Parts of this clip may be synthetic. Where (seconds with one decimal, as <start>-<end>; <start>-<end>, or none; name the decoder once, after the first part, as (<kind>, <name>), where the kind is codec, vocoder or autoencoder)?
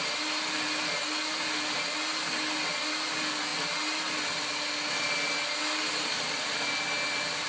none